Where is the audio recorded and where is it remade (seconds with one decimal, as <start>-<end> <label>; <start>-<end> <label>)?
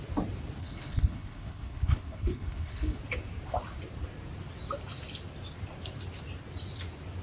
0.0-0.6 recorded; 0.6-3.0 remade; 3.0-7.2 recorded